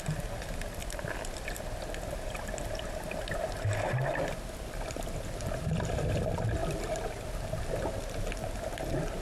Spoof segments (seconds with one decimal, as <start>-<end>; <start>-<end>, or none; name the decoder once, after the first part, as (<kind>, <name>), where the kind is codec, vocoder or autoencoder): none